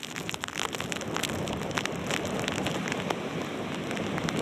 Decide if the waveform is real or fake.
real